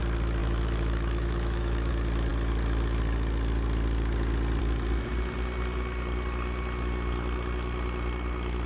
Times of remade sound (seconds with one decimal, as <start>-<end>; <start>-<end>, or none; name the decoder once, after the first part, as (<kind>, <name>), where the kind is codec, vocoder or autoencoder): 0.4-1.9 (autoencoder, DAC-VAE)